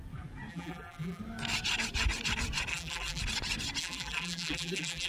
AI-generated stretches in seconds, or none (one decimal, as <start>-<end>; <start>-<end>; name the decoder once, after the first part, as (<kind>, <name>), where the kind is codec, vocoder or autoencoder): 0.5-1.2 (vocoder, BigVGAN v2); 2.7-3.2; 3.8-5.1